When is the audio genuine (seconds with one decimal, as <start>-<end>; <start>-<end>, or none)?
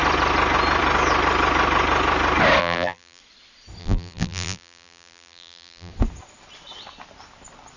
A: 0.0-2.6; 3.2-3.8; 5.9-7.8